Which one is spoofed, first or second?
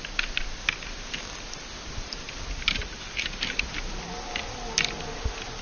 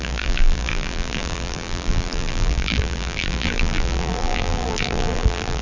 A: second